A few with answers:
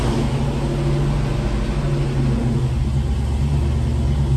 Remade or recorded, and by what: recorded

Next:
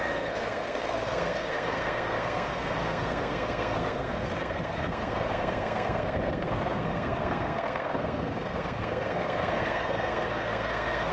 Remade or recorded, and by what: remade, codec, SNAC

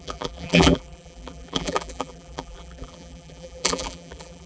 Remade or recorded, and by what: remade, vocoder, BigVGAN v2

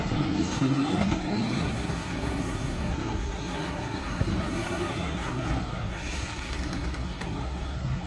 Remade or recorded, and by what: remade, codec, SNAC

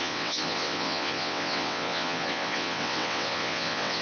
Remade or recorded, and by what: remade, vocoder, WaveNeXt